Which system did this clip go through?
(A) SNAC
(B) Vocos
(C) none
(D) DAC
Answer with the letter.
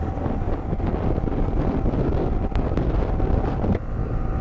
C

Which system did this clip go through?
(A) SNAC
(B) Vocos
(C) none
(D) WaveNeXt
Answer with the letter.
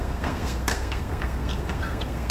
A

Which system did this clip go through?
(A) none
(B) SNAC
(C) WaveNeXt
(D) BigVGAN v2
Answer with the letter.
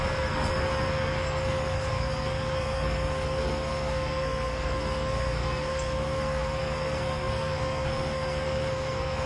B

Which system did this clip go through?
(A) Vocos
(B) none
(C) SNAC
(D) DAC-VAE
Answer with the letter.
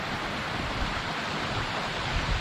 B